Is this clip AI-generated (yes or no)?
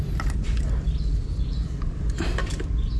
no